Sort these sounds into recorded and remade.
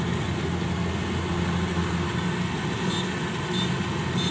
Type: recorded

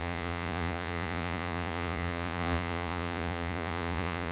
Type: remade